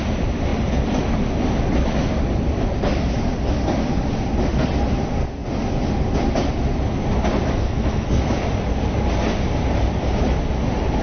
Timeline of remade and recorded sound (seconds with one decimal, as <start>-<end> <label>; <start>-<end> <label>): 0.0-7.6 recorded; 7.6-8.3 remade; 8.3-11.0 recorded